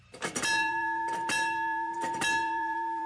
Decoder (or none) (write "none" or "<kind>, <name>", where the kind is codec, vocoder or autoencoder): vocoder, BigVGAN v2